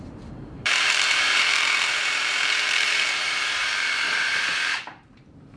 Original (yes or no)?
no